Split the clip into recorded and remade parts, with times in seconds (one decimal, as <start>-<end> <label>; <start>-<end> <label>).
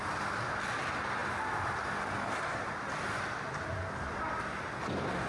0.0-5.3 recorded